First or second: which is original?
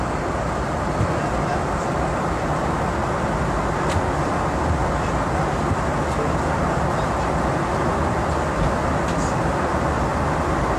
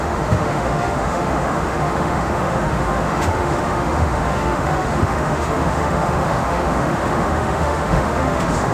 first